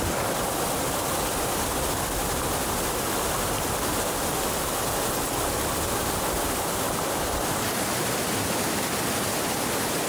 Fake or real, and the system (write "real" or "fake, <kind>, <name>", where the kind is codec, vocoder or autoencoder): real